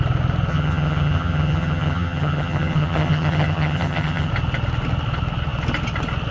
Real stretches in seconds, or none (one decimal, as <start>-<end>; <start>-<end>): 0.0-0.5; 4.3-6.3